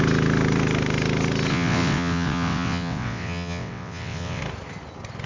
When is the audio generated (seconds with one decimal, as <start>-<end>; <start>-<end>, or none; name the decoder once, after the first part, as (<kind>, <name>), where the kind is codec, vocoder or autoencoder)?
1.5-4.4 (vocoder, WaveNeXt)